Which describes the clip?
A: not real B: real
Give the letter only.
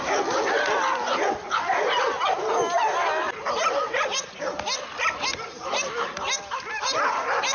B